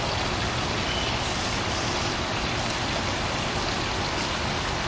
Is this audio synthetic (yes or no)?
no